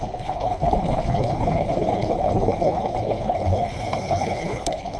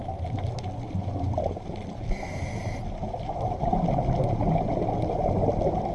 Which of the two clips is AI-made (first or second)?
first